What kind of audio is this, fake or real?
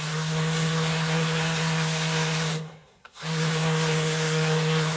fake